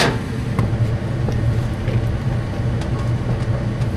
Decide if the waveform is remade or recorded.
recorded